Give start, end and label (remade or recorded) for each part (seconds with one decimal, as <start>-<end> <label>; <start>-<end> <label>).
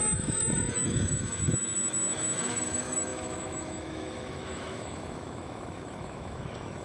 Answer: 0.0-6.8 remade